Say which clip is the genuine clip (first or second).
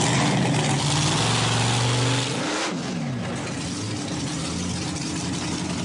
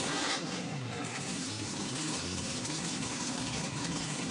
first